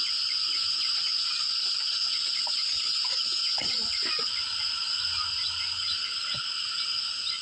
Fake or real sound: real